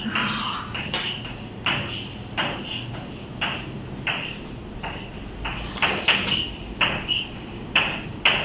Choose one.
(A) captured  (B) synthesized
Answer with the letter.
A